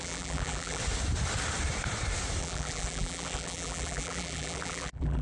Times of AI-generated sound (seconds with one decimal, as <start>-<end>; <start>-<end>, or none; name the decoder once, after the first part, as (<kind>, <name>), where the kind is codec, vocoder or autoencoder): 0.0-0.8 (vocoder, BigVGAN v2); 2.4-5.2